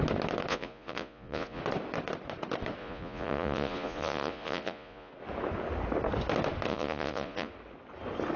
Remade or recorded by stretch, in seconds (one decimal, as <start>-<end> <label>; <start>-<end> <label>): 0.0-0.5 recorded; 0.5-1.6 remade; 1.6-2.8 recorded; 2.8-5.1 remade; 5.1-6.7 recorded; 6.7-7.5 remade; 7.5-8.4 recorded